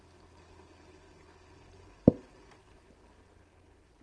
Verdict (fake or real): real